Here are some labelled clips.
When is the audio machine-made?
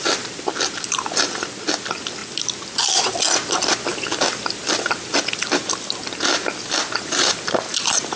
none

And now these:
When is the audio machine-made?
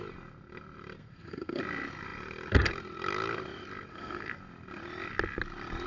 1.0-1.6 (codec, SNAC); 3.9-4.4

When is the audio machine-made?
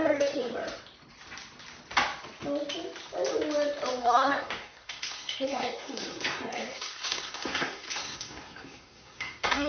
0.0-0.5 (codec, SNAC); 4.0-9.7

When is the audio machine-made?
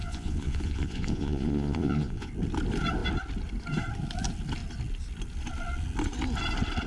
0.0-2.3 (vocoder, Vocos)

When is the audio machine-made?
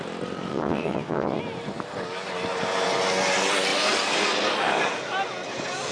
0.5-1.4 (vocoder, WaveNeXt)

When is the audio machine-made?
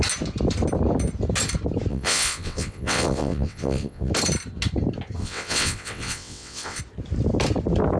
1.9-4.1 (vocoder, WaveNeXt); 5.2-6.8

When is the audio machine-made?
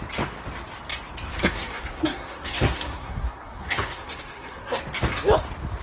1.3-4.8 (codec, SNAC)